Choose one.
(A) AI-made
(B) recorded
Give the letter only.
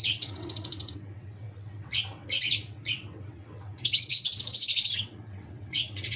A